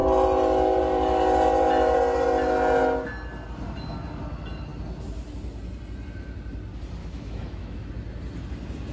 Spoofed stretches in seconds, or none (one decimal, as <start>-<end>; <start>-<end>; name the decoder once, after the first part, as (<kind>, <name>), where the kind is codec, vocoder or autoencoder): 7.0-7.9 (autoencoder, DAC-VAE)